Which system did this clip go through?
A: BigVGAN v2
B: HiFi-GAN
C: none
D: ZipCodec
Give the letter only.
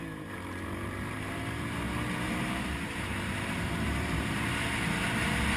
A